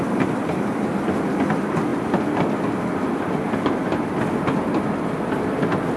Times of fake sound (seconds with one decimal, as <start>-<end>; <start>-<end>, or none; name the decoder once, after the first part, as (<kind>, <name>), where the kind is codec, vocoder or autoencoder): none